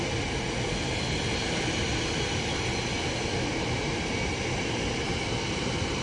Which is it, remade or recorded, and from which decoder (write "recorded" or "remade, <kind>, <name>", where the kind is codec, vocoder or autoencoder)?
recorded